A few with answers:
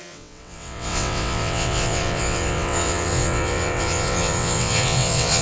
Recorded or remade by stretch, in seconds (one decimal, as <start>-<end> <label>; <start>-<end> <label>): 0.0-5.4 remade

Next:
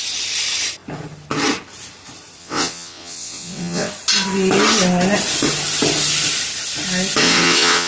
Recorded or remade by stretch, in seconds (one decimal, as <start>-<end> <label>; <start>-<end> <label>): 0.0-2.4 recorded; 2.4-3.9 remade; 3.9-7.2 recorded; 7.2-7.9 remade

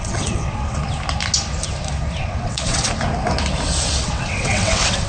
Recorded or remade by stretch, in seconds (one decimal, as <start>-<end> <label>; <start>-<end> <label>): 0.0-0.8 remade; 0.8-2.2 recorded; 2.2-2.9 remade; 2.9-3.9 recorded; 3.9-5.1 remade

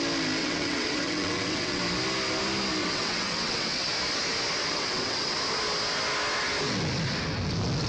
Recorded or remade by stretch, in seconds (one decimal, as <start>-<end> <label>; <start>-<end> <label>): 0.0-0.4 recorded; 0.4-1.8 remade; 1.8-2.8 recorded; 2.8-3.9 remade; 3.9-4.6 recorded; 4.6-5.4 remade; 5.4-7.9 recorded